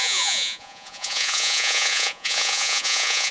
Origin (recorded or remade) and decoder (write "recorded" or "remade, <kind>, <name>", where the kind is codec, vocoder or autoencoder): remade, vocoder, Vocos